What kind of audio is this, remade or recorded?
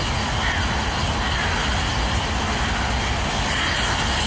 recorded